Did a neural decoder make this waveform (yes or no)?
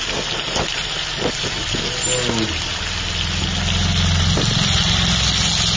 no